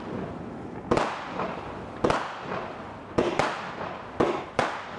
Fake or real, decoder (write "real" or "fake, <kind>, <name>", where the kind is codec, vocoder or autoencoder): fake, vocoder, BigVGAN v2